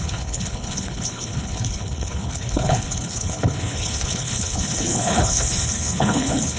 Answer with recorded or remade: remade